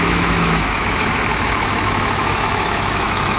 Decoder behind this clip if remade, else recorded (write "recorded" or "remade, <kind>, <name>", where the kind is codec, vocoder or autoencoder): remade, autoencoder, DAC-VAE